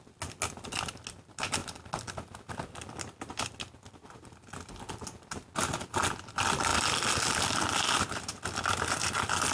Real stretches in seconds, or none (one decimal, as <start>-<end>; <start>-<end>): 0.0-9.5

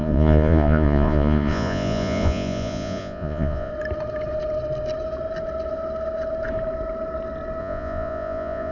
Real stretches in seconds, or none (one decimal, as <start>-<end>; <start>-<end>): 3.7-7.6

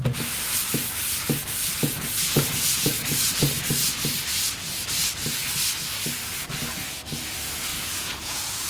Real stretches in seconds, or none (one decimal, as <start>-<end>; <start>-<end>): 0.0-1.8; 3.3-7.7

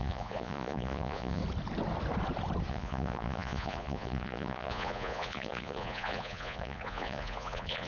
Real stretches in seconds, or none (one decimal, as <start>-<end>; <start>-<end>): 1.4-2.7